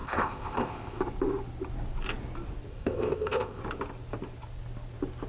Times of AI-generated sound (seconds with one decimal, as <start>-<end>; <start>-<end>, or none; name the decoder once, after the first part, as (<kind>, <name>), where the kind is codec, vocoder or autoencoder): 0.0-1.0 (codec, ZipCodec); 2.7-3.6